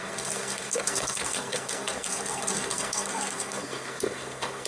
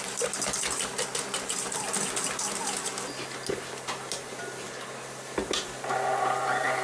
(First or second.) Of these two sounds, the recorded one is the second